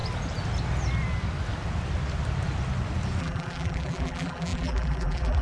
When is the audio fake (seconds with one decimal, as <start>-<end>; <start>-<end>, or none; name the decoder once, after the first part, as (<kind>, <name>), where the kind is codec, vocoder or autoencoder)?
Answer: 3.2-5.4 (vocoder, BigVGAN v2)